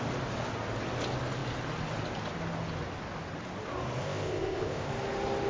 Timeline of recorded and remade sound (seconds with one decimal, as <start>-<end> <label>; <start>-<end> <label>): 0.0-4.0 recorded; 4.0-4.9 remade; 4.9-5.5 recorded